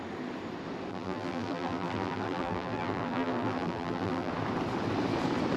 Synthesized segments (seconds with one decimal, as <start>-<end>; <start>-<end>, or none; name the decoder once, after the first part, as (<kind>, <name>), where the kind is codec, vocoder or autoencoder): 0.9-4.3 (vocoder, BigVGAN v2)